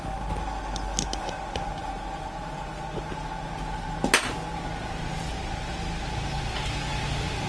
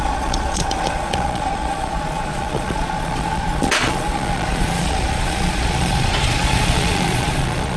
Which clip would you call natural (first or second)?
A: first